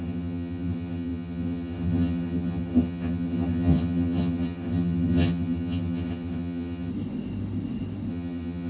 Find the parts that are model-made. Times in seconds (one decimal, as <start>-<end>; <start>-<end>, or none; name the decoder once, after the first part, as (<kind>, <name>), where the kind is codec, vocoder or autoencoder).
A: 0.0-6.9 (vocoder, HiFi-GAN); 8.1-8.7